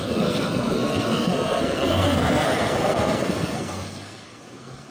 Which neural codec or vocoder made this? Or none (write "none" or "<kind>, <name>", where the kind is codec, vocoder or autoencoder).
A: codec, SNAC